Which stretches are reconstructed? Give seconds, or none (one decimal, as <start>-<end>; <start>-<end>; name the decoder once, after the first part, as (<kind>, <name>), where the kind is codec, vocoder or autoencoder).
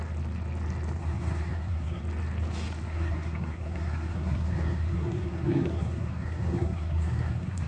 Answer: 1.0-2.0 (codec, SNAC); 2.9-7.7